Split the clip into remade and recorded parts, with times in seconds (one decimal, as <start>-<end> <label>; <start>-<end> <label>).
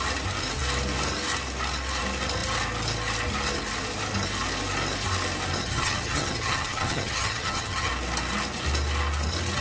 0.0-5.6 recorded; 5.6-7.9 remade; 7.9-9.6 recorded